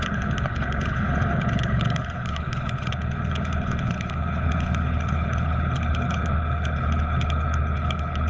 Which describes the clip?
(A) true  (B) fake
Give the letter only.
B